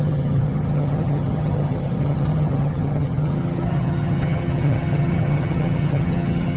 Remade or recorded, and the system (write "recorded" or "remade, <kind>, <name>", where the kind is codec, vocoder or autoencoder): remade, vocoder, HiFi-GAN